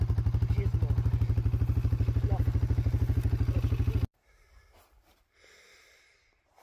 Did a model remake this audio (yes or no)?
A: no